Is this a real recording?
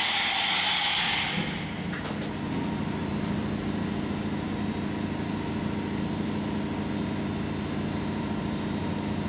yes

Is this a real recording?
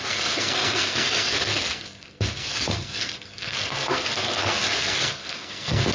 no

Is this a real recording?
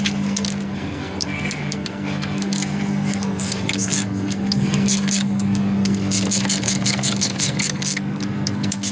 no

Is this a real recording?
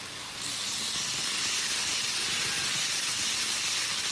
yes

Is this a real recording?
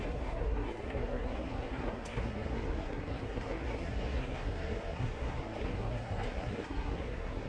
no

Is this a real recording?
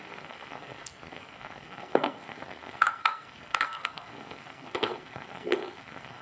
no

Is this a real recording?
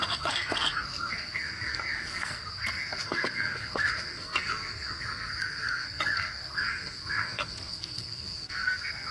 no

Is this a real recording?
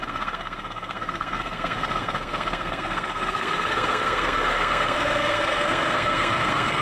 no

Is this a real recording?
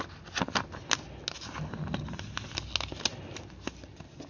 yes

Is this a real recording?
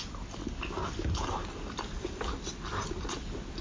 yes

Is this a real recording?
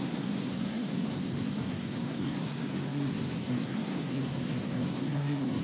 no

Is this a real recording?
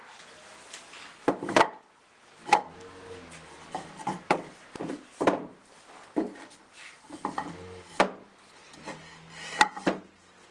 yes